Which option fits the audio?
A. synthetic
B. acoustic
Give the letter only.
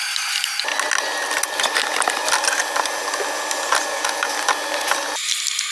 B